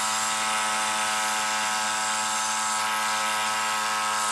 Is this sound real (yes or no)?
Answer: yes